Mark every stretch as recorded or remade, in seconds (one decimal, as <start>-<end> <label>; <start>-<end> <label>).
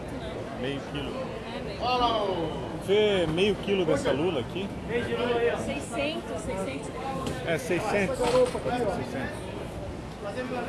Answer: 0.0-6.6 recorded; 6.6-7.4 remade; 7.4-10.7 recorded